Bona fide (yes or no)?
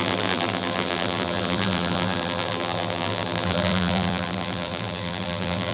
no